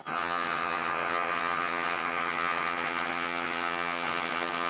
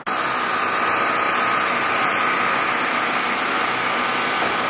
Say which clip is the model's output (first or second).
first